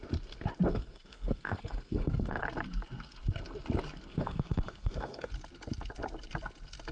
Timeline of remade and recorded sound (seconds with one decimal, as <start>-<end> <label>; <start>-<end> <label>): 0.0-0.7 recorded; 0.7-2.4 remade; 2.4-4.1 recorded; 4.1-5.3 remade; 5.3-6.9 recorded